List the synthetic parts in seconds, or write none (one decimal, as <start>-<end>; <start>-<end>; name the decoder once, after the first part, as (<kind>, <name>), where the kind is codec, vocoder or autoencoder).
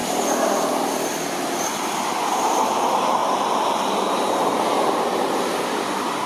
1.7-3.2 (vocoder, BigVGAN v2); 4.0-6.3